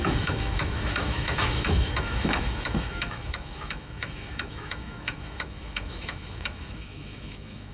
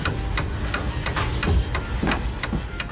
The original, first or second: second